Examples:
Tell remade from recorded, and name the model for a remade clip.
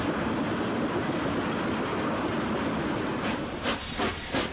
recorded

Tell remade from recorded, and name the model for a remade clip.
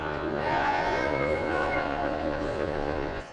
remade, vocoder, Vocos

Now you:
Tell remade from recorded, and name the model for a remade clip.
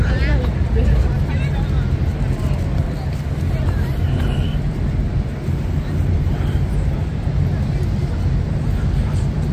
recorded